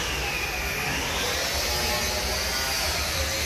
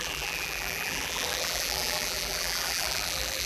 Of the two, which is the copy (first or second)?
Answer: second